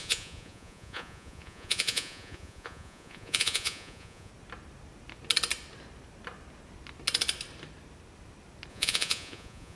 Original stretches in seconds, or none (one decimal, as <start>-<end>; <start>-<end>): 4.3-8.7